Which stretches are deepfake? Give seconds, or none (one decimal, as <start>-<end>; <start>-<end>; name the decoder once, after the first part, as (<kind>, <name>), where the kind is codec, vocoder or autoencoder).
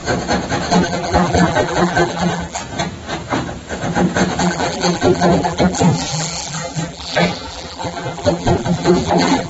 0.7-2.6 (vocoder, BigVGAN v2); 4.4-9.5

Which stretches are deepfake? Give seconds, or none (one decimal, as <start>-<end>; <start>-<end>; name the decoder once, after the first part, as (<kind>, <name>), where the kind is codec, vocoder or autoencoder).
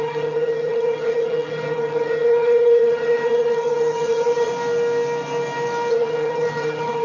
0.0-4.5 (vocoder, HiFi-GAN); 5.9-7.0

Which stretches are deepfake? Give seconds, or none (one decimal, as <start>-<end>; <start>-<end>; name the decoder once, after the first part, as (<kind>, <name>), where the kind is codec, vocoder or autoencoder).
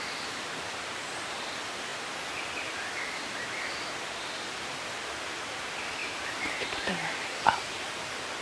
6.0-8.4 (vocoder, BigVGAN v2)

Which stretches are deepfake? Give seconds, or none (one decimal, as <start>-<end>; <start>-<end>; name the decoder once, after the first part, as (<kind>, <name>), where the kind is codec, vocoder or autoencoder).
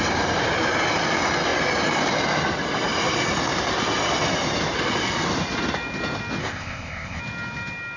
6.4-7.2 (codec, ZipCodec)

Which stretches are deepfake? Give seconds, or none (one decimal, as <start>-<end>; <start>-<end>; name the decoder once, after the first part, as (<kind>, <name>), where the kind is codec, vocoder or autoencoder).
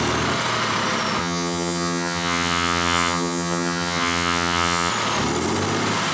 1.2-4.9 (vocoder, HiFi-GAN)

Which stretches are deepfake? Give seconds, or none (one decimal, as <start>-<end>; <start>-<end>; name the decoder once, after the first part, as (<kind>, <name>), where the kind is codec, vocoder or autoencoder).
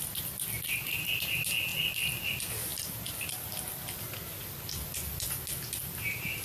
none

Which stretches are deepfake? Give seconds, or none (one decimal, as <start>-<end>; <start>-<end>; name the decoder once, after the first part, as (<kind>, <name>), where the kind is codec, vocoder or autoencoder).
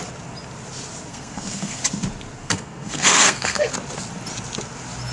1.1-1.8 (codec, SNAC); 2.4-3.7